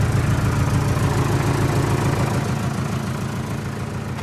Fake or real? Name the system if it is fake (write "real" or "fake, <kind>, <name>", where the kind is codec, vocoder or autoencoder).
real